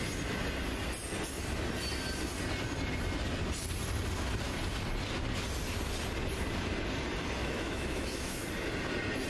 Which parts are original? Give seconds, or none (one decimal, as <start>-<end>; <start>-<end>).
0.0-7.4; 8.5-9.3